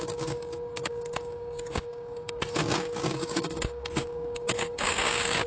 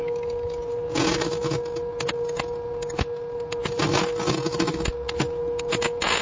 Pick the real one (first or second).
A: second